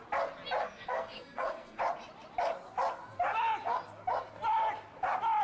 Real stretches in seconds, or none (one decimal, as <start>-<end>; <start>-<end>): 0.0-0.6; 1.8-5.4